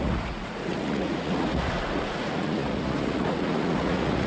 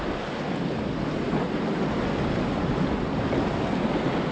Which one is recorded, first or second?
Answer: second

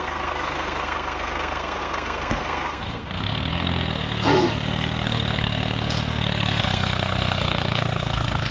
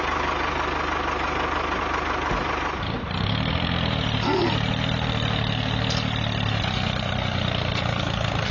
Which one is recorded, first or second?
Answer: second